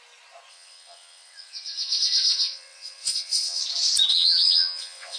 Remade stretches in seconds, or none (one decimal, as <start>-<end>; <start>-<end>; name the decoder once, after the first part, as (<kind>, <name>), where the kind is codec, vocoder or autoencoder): 0.5-3.6 (vocoder, WaveNeXt); 4.1-5.2